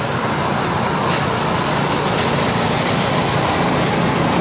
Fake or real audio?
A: real